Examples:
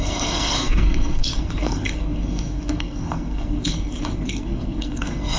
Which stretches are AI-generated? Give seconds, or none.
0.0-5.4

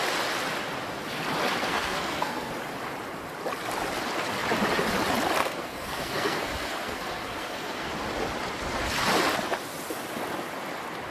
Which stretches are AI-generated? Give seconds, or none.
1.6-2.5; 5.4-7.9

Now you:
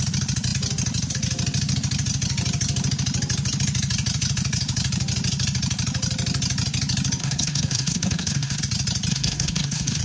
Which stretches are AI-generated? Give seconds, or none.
7.2-8.6; 9.1-10.0